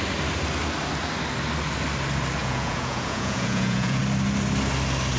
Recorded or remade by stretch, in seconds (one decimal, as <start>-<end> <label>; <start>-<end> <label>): 0.0-2.4 recorded; 2.4-4.0 remade; 4.0-5.2 recorded